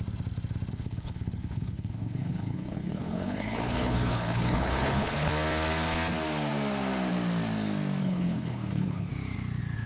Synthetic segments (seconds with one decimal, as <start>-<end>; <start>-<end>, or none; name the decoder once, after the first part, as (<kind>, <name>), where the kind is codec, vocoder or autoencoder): 0.7-5.3 (codec, HILCodec); 8.0-9.1